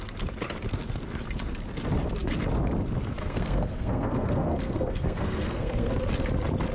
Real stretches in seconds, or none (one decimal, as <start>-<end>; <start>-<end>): 0.0-3.2; 5.9-6.7